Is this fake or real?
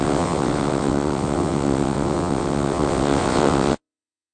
fake